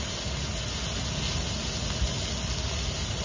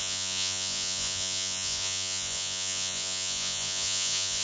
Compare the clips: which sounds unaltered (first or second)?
first